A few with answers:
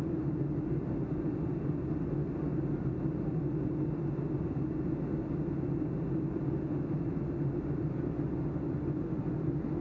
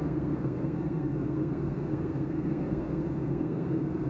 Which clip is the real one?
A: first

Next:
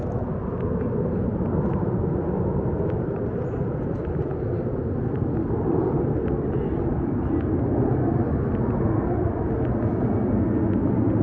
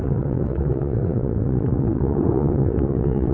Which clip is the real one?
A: first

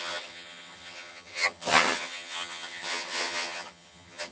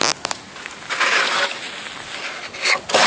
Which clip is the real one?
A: second